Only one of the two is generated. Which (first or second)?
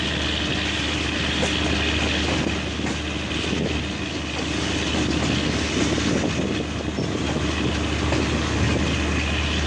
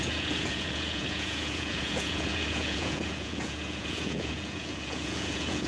second